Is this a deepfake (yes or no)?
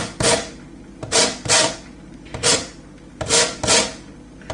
no